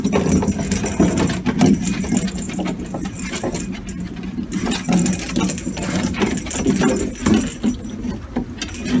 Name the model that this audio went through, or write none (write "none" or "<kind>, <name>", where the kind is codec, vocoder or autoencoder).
none